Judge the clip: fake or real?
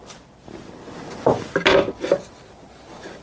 real